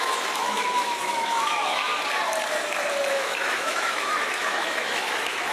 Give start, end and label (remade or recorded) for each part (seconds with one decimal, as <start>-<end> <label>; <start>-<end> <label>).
0.0-1.9 remade; 1.9-3.1 recorded; 3.1-5.5 remade

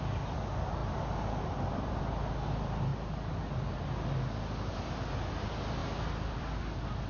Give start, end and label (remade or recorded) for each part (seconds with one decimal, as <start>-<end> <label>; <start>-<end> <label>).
0.0-7.1 recorded